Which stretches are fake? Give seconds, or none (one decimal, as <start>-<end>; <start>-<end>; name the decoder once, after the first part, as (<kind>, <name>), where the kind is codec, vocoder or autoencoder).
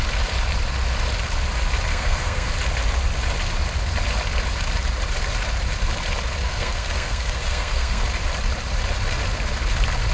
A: 1.9-2.5 (codec, SNAC); 6.4-8.0